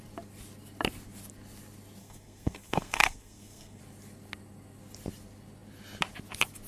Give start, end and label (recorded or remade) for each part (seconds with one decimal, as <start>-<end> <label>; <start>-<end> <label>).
0.0-2.0 recorded; 2.0-3.8 remade; 3.8-6.7 recorded